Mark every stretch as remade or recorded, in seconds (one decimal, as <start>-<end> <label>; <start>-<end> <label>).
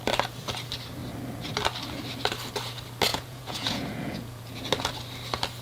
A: 0.0-3.1 recorded; 3.1-4.6 remade; 4.6-5.6 recorded